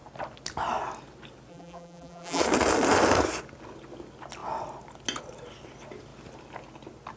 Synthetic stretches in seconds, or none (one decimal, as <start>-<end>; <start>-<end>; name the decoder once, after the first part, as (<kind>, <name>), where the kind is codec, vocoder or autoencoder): 1.5-2.4 (vocoder, BigVGAN v2)